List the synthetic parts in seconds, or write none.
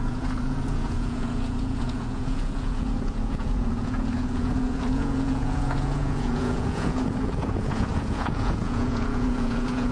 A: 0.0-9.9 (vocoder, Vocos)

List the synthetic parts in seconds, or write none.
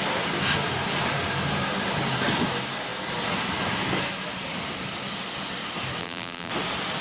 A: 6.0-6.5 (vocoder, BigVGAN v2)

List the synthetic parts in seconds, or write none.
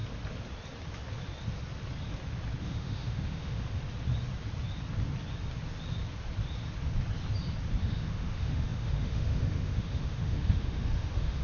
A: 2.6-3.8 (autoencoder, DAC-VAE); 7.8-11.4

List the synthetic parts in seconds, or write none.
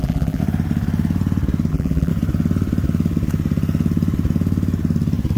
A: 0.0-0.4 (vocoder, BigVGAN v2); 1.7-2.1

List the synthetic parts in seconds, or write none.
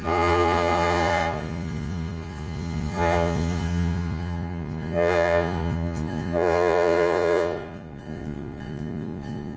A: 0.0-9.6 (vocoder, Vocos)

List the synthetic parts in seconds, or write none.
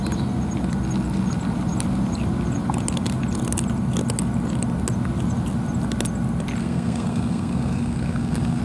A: 6.6-8.6 (codec, SNAC)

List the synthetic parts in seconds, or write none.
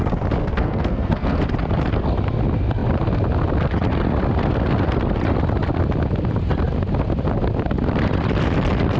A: 0.4-1.4 (codec, SNAC)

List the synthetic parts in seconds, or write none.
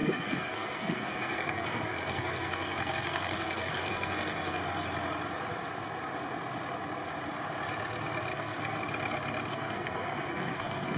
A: 0.0-4.6 (codec, SNAC); 8.3-8.8; 9.5-11.0